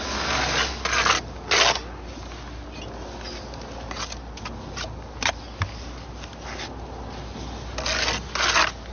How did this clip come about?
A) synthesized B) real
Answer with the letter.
B